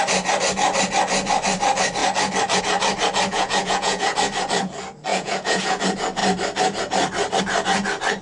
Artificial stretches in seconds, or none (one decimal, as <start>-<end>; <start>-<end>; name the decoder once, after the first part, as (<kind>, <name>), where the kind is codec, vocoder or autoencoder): 3.3-4.2 (vocoder, Vocos); 5.1-5.8